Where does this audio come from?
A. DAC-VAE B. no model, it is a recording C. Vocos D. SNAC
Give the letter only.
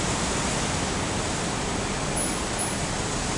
B